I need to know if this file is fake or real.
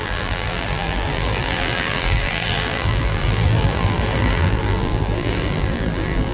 fake